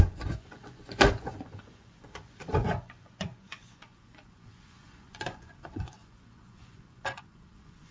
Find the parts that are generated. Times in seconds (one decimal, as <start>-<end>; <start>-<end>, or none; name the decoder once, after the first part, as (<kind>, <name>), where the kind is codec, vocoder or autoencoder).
0.0-7.9 (vocoder, Vocos)

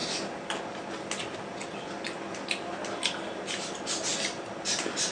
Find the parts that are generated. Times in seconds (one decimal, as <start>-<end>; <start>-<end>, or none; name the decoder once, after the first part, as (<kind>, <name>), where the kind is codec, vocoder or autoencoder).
none

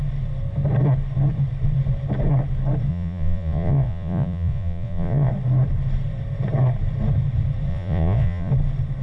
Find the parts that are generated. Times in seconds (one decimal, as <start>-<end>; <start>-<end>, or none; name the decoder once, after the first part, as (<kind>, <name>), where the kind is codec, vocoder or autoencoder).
2.9-5.3 (vocoder, Vocos); 7.7-8.5

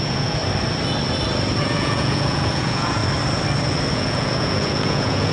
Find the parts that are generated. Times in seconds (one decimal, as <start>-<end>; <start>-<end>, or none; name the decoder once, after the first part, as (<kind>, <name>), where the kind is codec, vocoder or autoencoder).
0.0-0.4 (vocoder, Vocos); 1.6-3.0; 3.9-5.3

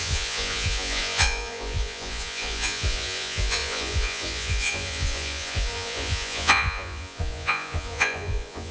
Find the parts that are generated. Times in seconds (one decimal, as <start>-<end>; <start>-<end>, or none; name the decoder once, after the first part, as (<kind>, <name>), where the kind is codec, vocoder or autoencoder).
0.0-8.7 (vocoder, Vocos)